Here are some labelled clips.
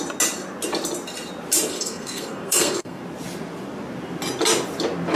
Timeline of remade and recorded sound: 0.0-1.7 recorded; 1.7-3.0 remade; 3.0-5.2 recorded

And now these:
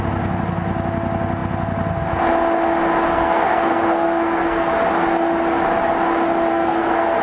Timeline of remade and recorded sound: 0.0-3.1 recorded; 3.1-4.7 remade; 4.7-6.5 recorded; 6.5-7.2 remade

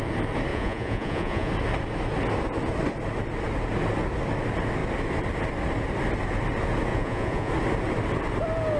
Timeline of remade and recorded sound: 0.0-0.5 recorded; 0.5-1.5 remade; 1.5-6.9 recorded; 6.9-7.5 remade; 7.5-8.8 recorded

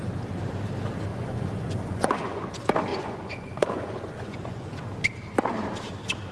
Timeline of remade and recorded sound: 0.0-1.1 recorded; 1.1-2.4 remade; 2.4-2.9 recorded; 2.9-4.8 remade; 4.8-6.3 recorded